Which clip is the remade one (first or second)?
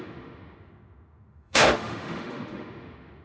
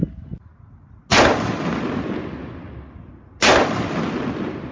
first